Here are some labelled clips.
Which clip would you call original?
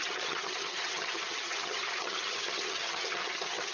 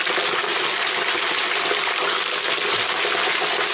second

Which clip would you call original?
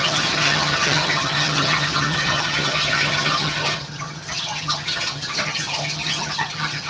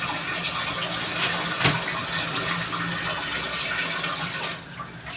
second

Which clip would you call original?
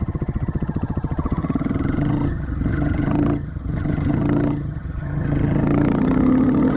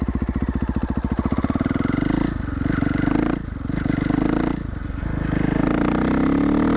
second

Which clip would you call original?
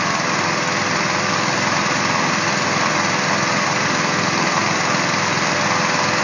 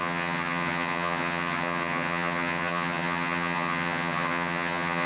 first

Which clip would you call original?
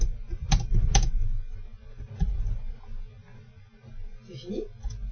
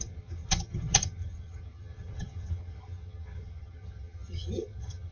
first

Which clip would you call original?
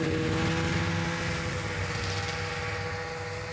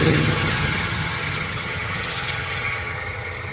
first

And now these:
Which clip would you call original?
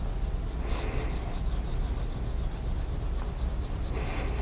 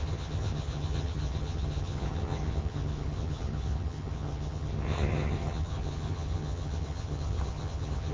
first